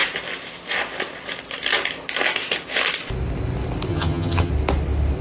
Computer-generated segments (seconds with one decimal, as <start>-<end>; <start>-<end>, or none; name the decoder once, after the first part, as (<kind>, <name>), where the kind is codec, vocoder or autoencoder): 3.9-4.5 (vocoder, HiFi-GAN)